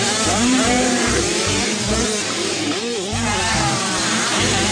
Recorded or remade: remade